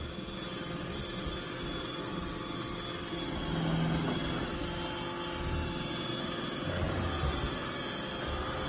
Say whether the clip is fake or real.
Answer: real